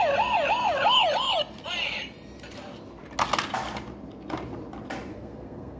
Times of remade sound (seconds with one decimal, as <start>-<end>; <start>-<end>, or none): 5.1-5.8